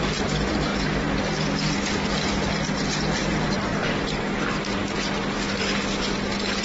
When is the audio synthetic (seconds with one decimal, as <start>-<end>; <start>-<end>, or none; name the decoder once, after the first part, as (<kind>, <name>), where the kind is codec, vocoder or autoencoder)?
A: 0.0-0.7 (vocoder, BigVGAN v2); 3.2-3.7